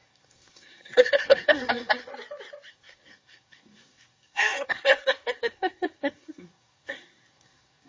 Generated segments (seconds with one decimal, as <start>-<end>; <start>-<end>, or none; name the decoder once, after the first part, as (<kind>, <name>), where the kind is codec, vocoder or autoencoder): 0.0-2.1 (codec, SNAC); 2.7-7.9